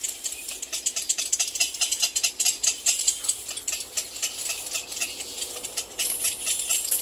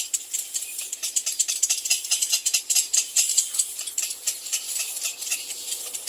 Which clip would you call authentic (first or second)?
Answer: first